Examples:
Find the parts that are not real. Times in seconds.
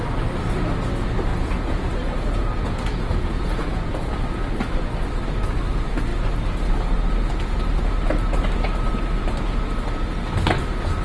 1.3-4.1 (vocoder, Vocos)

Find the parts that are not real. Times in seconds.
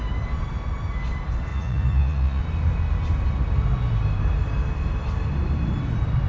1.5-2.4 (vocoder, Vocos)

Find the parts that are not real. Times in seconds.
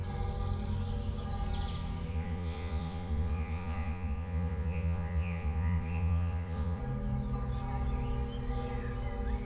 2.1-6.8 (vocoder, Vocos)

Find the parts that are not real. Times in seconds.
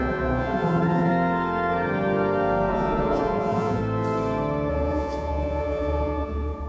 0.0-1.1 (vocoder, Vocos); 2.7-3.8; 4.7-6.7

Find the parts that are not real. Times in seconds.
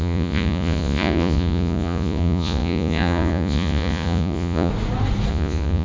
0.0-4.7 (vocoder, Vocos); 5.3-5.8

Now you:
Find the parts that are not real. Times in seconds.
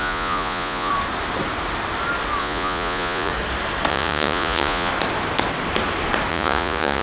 0.0-0.9 (vocoder, Vocos); 2.4-3.3; 3.9-4.9; 6.3-7.0